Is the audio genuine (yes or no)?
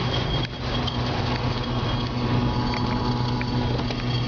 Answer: yes